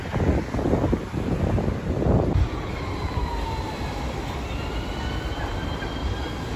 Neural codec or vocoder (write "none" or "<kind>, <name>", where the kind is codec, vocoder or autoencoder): none